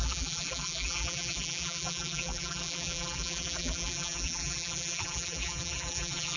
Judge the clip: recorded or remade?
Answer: remade